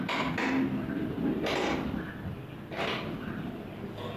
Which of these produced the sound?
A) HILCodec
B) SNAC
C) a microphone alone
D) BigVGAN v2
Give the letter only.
C